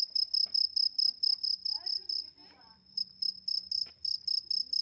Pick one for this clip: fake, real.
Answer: real